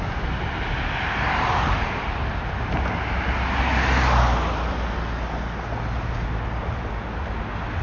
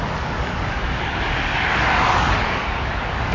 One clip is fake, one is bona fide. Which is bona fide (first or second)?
first